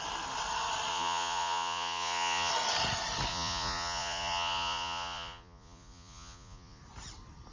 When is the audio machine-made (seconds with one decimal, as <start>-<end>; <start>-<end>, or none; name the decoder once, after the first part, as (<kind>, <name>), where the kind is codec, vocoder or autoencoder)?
0.9-2.5 (vocoder, Vocos); 3.3-6.8

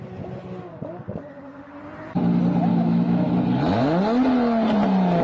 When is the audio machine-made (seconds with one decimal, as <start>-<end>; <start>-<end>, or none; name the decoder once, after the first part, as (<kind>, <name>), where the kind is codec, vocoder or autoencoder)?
2.7-3.3 (autoencoder, DAC-VAE)

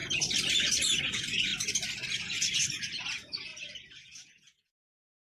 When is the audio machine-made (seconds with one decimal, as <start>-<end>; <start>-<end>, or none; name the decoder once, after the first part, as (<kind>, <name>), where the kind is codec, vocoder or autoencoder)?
1.0-1.5 (vocoder, Vocos); 2.2-3.5; 4.0-5.3

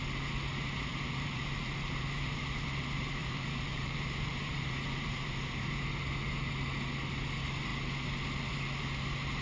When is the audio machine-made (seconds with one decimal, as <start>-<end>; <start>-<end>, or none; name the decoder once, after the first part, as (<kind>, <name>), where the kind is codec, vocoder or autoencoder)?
0.9-2.4 (vocoder, BigVGAN v2); 3.2-5.9

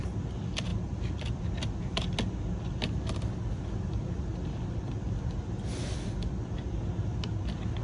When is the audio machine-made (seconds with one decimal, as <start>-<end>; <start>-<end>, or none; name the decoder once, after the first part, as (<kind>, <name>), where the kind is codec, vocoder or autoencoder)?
none

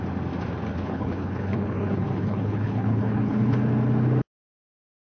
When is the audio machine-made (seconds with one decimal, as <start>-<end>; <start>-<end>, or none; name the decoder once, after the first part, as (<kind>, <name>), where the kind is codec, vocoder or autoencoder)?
0.7-3.6 (codec, HILCodec)

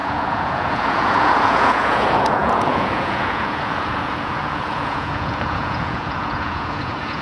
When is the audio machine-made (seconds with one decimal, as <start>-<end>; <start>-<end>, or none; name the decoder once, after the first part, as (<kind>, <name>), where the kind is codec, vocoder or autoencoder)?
0.0-7.2 (vocoder, Vocos)